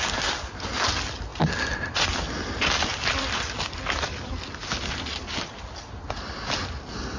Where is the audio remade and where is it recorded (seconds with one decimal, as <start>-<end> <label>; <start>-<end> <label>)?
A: 0.0-7.2 recorded